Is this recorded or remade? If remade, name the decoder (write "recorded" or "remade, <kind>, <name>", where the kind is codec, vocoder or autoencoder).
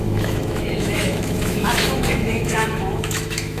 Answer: remade, autoencoder, DAC-VAE